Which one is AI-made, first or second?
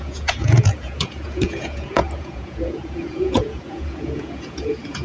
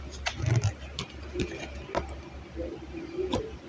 first